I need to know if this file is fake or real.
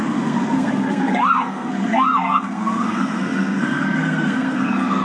fake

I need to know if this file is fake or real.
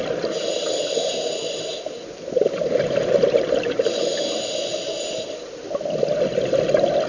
real